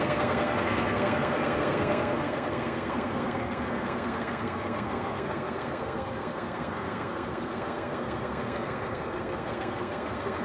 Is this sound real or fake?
fake